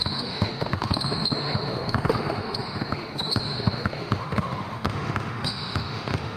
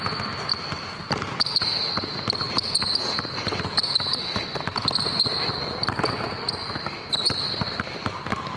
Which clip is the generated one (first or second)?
first